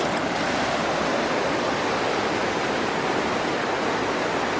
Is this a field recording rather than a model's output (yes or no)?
yes